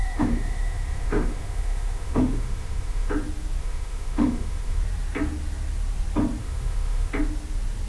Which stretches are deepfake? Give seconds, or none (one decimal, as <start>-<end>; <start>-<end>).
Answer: 0.0-3.1; 3.6-4.8; 6.4-7.1